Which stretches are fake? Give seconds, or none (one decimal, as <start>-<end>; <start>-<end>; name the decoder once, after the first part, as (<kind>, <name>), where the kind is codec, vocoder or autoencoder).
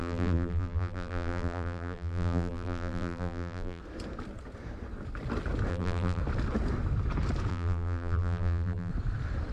0.0-3.8 (vocoder, BigVGAN v2); 5.7-6.2; 7.5-8.9